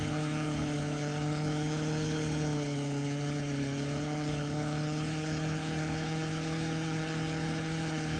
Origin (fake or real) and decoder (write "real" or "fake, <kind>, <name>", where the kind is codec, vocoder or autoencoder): fake, codec, HILCodec